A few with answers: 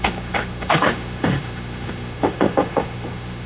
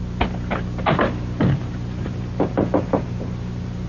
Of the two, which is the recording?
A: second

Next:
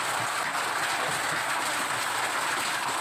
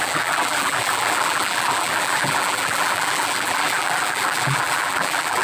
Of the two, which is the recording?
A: first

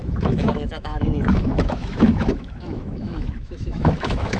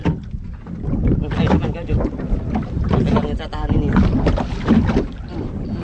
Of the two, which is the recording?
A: second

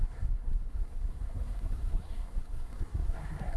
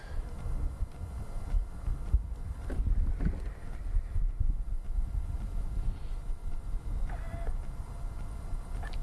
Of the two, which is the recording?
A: second